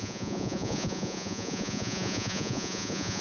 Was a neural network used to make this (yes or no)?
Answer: yes